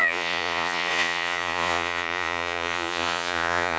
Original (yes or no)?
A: no